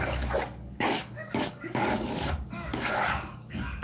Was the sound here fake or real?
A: fake